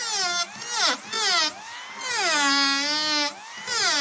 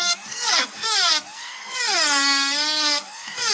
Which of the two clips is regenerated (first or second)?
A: second